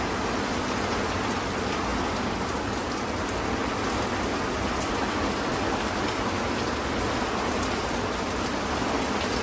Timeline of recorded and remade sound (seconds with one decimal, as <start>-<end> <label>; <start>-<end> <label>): 0.0-9.4 recorded